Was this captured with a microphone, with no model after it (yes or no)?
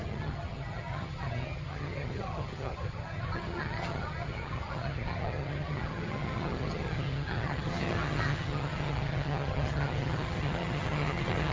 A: no